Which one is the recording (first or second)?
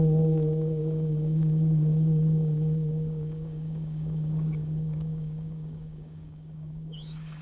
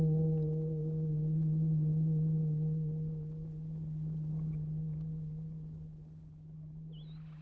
second